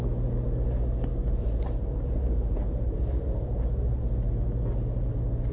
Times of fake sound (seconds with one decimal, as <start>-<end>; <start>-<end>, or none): 1.1-4.0